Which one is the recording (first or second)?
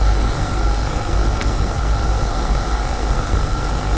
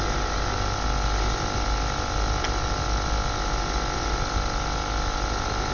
second